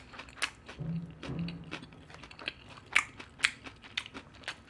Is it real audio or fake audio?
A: real